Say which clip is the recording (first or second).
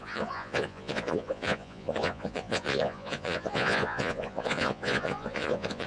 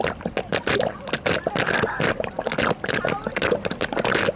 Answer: second